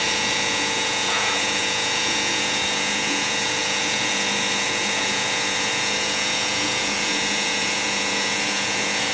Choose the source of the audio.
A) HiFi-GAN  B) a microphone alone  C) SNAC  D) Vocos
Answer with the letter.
D